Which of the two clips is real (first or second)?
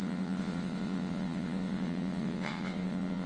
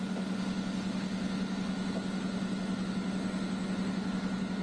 second